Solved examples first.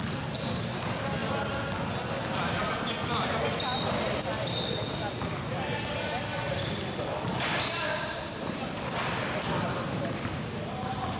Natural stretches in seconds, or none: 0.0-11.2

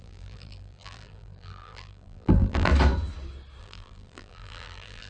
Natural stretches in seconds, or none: 2.7-3.6

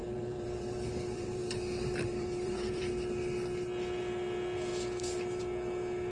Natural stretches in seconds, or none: 2.9-6.1

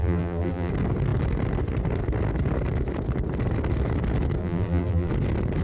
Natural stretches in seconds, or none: 0.7-4.4; 5.1-5.6